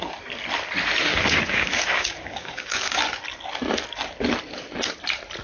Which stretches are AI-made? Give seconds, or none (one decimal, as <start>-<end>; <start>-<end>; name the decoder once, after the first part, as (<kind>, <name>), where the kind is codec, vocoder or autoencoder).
1.1-3.0 (codec, DAC)